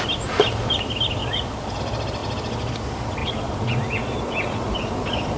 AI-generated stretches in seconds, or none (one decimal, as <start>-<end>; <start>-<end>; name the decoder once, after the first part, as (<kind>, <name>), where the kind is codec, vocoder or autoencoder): 1.2-1.8 (vocoder, Vocos); 3.2-5.4